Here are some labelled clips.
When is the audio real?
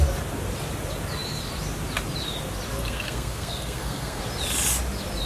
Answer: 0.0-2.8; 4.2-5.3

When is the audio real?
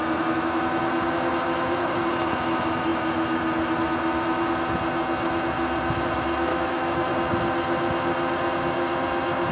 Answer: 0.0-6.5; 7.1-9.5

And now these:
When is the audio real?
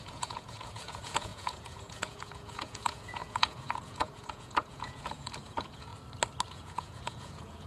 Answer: 5.9-6.5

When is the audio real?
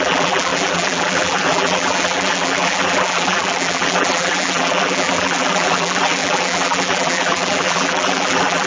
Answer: none